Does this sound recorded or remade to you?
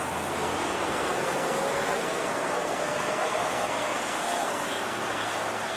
remade